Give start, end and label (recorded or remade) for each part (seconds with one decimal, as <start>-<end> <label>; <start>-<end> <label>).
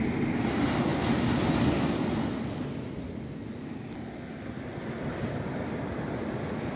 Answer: 0.0-6.8 recorded